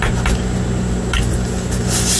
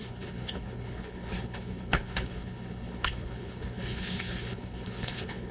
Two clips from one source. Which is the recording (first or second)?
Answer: first